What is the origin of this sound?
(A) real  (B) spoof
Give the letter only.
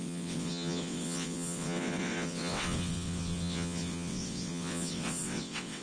B